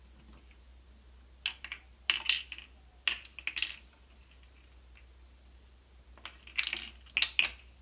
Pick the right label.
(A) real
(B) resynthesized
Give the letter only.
A